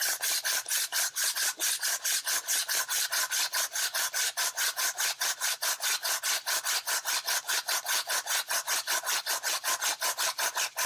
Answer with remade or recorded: recorded